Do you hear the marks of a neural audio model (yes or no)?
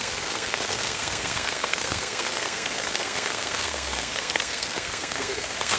yes